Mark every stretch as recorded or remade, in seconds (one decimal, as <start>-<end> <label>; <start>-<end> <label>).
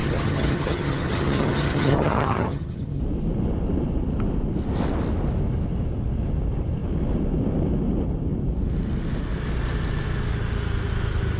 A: 0.0-3.0 remade; 3.0-11.4 recorded